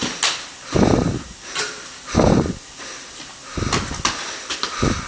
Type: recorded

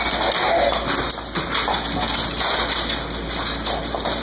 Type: recorded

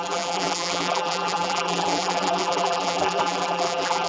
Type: remade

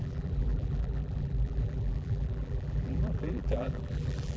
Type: remade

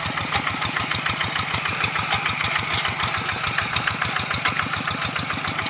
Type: recorded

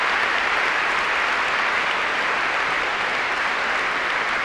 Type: remade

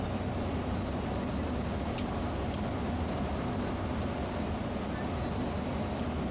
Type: recorded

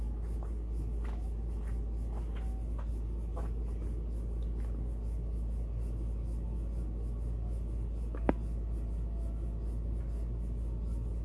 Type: recorded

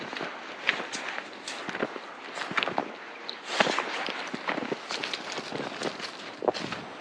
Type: recorded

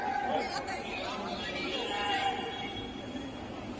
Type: recorded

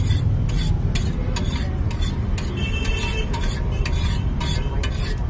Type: remade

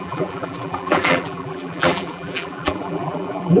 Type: remade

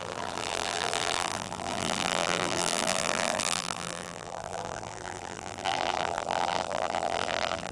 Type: remade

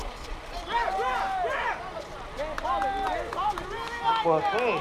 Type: recorded